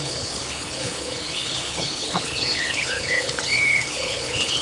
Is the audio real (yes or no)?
no